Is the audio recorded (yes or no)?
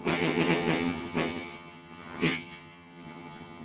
no